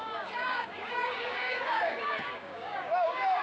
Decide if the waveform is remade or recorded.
remade